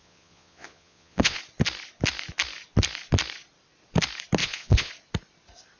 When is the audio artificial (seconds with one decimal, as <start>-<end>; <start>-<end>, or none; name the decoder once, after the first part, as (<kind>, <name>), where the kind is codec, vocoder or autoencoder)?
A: 0.0-1.4 (vocoder, Vocos); 4.4-4.9